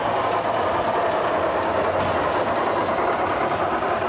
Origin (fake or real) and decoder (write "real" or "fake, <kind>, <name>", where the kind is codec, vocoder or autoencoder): real